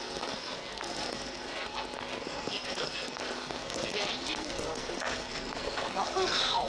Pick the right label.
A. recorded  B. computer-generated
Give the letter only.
B